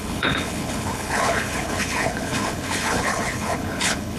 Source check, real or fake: fake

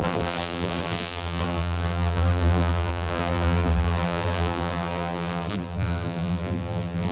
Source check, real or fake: fake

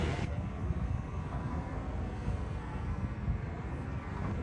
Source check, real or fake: fake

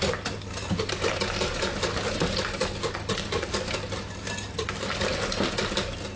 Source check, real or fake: real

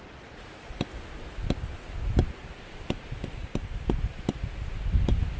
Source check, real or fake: real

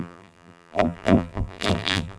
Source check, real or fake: fake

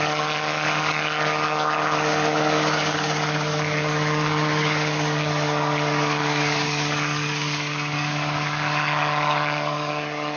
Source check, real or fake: fake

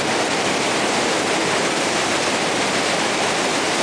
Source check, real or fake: real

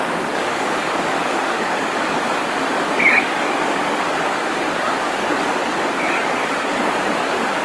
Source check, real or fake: fake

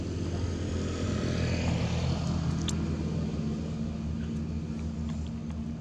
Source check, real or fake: real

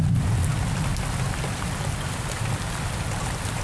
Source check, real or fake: real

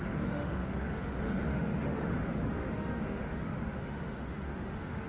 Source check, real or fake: fake